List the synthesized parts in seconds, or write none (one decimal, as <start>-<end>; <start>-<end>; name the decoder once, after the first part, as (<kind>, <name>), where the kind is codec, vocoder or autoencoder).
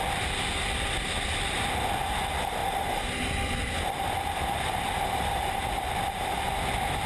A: none